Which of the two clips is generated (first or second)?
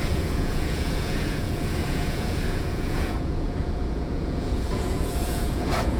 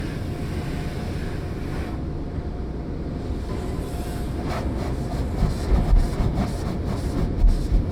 first